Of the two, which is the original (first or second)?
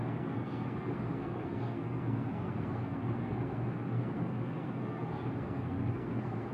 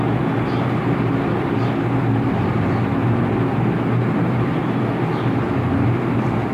second